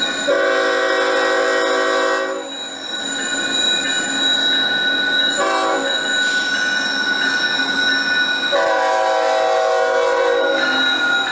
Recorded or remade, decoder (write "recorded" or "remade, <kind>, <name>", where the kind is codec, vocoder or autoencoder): recorded